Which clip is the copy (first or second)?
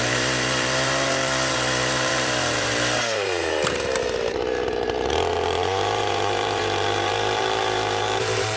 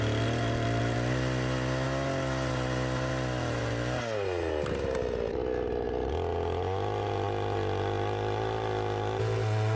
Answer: first